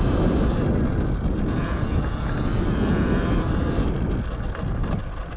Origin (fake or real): real